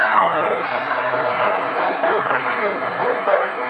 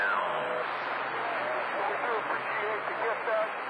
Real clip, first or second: second